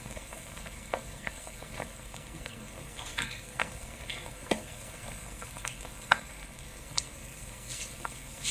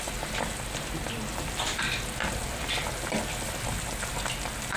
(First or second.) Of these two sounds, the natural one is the second